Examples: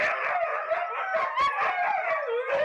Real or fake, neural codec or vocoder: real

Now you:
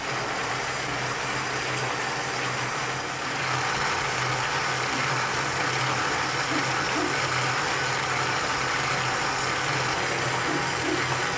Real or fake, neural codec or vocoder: real